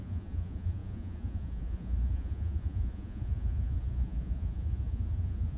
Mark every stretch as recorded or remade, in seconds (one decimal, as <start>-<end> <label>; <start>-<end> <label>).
0.0-5.6 remade